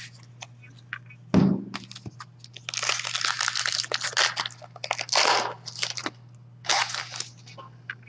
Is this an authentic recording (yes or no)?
yes